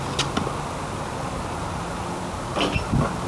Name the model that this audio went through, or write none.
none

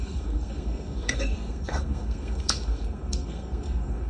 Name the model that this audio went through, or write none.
codec, SNAC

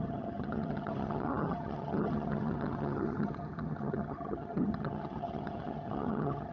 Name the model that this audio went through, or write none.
vocoder, HiFi-GAN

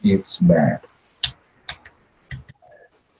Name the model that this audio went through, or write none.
none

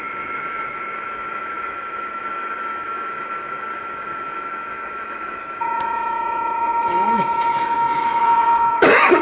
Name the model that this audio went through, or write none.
autoencoder, DAC-VAE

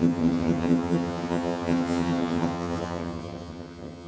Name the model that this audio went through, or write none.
vocoder, HiFi-GAN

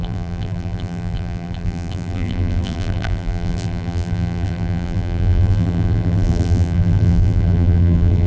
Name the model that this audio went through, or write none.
vocoder, BigVGAN v2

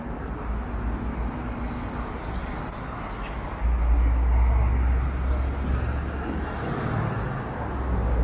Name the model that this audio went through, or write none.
none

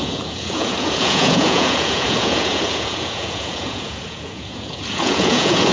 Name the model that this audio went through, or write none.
vocoder, Vocos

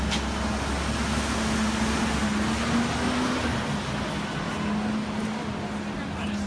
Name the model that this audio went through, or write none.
none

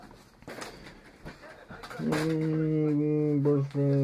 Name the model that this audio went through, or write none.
none